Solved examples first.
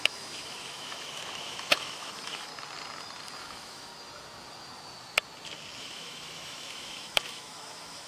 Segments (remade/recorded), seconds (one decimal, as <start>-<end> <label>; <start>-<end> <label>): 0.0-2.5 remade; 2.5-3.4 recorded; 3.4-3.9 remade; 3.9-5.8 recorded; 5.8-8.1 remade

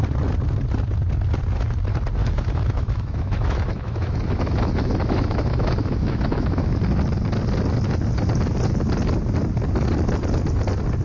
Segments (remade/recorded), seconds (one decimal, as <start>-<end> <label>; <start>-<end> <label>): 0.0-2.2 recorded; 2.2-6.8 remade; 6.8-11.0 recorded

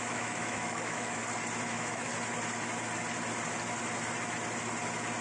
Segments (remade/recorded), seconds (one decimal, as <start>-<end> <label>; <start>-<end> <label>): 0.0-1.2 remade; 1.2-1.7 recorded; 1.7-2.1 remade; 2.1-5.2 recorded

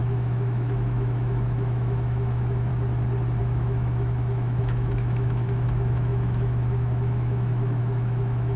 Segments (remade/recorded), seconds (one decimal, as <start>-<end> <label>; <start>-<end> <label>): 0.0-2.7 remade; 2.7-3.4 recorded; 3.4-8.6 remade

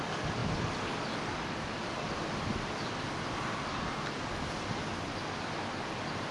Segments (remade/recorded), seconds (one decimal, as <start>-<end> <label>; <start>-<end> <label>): 0.0-6.3 recorded

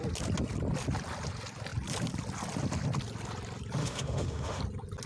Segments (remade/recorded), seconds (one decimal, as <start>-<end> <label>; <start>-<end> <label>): 0.0-3.8 recorded; 3.8-4.6 remade; 4.6-5.1 recorded

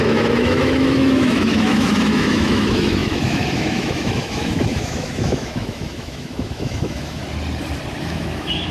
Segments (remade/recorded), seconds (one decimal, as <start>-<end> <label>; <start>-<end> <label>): 0.0-7.2 remade; 7.2-8.0 recorded; 8.0-8.7 remade

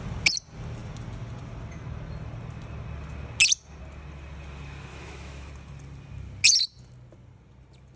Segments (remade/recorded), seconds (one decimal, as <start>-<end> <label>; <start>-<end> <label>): 0.0-4.9 recorded; 4.9-5.5 remade; 5.5-8.0 recorded